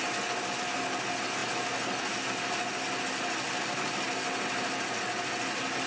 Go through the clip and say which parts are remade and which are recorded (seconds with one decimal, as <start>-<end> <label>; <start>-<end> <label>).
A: 0.0-5.9 recorded